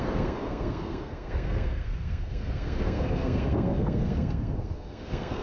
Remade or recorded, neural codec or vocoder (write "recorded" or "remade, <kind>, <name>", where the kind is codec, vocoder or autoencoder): remade, codec, SNAC